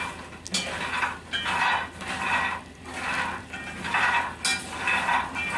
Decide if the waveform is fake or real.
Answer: real